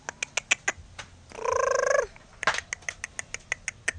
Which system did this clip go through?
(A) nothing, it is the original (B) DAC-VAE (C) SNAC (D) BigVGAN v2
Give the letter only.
A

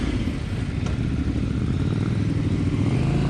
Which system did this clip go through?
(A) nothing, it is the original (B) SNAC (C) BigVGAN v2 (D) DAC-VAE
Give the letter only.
A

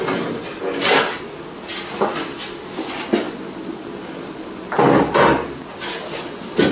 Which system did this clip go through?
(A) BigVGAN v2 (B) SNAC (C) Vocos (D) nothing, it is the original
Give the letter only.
D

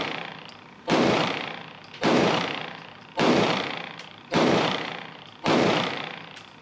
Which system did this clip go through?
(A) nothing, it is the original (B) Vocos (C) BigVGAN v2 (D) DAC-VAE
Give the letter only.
C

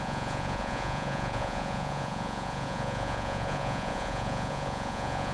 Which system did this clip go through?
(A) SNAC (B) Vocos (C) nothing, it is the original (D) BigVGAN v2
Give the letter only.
B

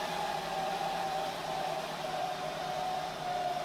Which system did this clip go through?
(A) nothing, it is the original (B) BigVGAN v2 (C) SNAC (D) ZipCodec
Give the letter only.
B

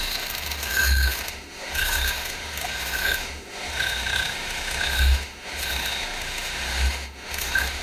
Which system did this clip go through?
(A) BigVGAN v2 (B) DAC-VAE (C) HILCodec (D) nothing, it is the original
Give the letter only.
B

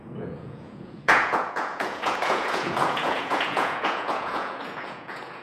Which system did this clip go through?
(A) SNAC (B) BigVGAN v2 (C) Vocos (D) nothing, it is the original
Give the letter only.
C